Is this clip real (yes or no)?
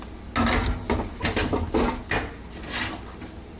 yes